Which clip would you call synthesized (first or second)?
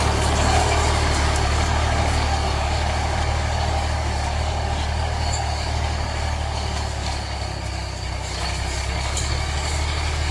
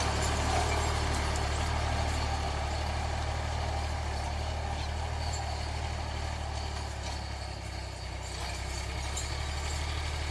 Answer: first